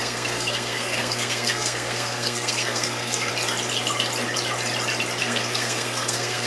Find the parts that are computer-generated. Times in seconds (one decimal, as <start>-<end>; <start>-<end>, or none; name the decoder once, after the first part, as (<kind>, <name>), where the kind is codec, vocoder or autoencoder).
0.0-3.3 (codec, SNAC); 5.2-6.5